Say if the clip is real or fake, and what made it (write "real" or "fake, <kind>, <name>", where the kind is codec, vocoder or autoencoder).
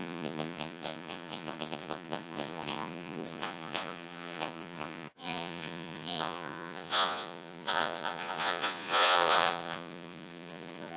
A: fake, vocoder, Vocos